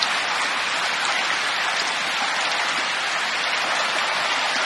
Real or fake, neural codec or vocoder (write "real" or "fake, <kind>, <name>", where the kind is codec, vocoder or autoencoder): real